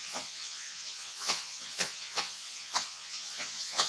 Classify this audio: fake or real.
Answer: fake